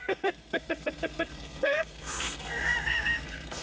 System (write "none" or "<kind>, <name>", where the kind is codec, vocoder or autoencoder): codec, SNAC